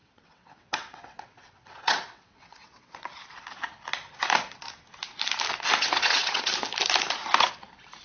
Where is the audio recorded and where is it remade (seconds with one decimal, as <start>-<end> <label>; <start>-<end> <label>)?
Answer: 0.0-3.2 remade; 3.2-5.8 recorded; 5.8-6.5 remade; 6.5-8.0 recorded

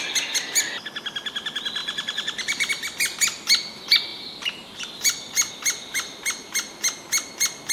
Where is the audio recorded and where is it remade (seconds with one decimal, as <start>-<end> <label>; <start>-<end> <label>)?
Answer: 0.0-1.8 recorded; 1.8-2.7 remade; 2.7-4.1 recorded; 4.1-5.5 remade; 5.5-7.7 recorded